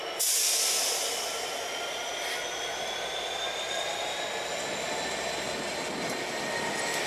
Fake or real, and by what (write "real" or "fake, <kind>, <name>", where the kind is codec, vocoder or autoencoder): real